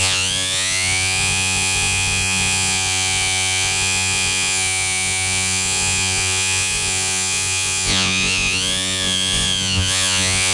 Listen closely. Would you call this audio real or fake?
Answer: fake